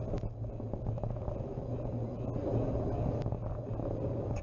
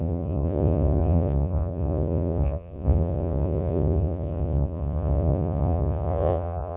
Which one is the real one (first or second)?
first